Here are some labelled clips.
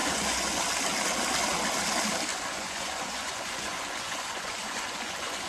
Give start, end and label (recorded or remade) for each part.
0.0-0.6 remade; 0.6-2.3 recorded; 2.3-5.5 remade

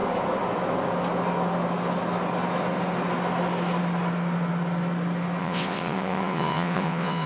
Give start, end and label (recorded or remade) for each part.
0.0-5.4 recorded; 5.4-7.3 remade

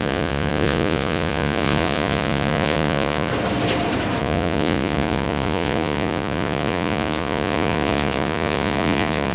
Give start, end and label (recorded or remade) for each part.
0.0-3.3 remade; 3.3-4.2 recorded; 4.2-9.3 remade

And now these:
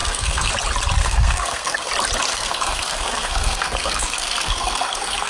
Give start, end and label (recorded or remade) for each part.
0.0-0.5 remade; 0.5-1.0 recorded; 1.0-1.9 remade; 1.9-2.3 recorded; 2.3-5.3 remade

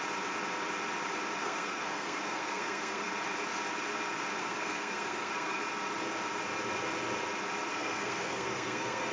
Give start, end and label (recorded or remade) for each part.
0.0-1.4 recorded; 1.4-3.1 remade; 3.1-4.4 recorded; 4.4-5.6 remade; 5.6-7.7 recorded; 7.7-9.1 remade

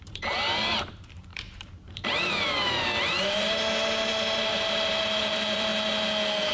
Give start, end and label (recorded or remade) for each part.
0.0-5.7 remade; 5.7-6.5 recorded

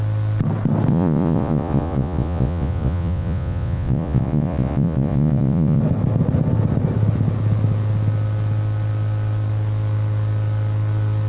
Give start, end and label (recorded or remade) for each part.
0.0-0.9 recorded; 0.9-5.8 remade; 5.8-11.3 recorded

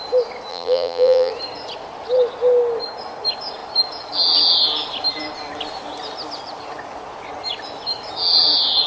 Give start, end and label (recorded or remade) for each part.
0.0-0.5 recorded; 0.5-1.3 remade; 1.3-8.9 recorded